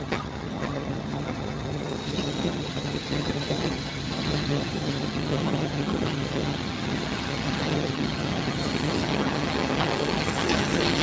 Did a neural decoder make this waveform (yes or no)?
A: yes